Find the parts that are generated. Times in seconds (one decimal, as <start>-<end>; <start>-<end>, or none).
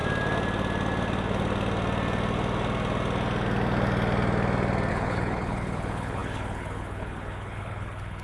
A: 4.9-8.2